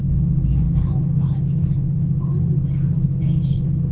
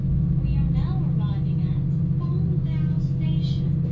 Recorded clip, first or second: second